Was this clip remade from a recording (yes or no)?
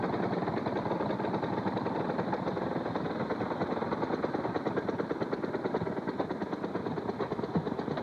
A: no